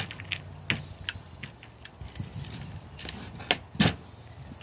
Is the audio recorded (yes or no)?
yes